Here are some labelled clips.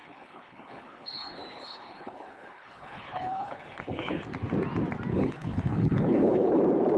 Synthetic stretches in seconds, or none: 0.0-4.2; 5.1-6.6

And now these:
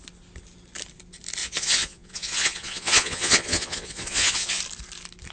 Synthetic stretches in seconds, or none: 1.4-4.6

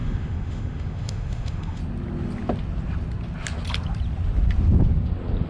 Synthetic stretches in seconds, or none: 0.0-1.8

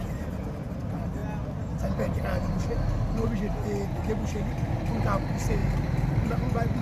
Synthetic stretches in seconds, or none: 5.6-6.3

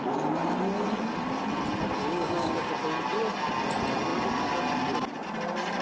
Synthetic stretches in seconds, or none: 2.0-2.7